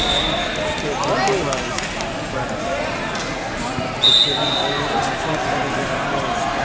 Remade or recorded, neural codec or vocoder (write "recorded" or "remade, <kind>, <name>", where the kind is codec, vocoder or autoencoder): recorded